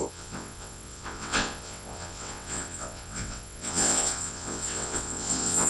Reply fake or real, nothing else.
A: fake